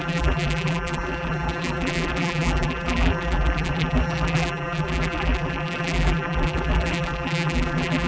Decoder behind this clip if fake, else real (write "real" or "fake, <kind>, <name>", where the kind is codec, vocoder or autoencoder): fake, vocoder, BigVGAN v2